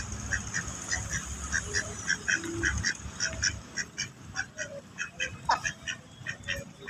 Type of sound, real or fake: real